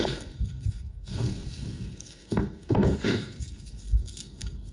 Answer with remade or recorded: remade